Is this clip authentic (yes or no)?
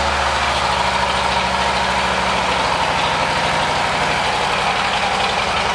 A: yes